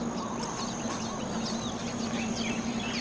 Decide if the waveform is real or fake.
real